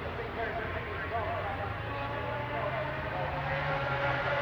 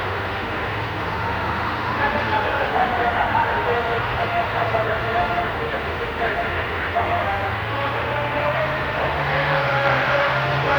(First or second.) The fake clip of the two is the second